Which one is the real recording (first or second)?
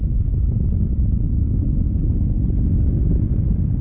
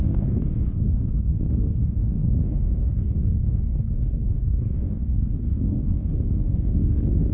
first